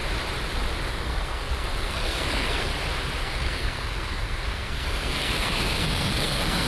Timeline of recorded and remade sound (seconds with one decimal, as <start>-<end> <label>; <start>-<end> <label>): 0.0-0.9 recorded; 0.9-2.7 remade; 2.7-3.2 recorded; 3.2-6.7 remade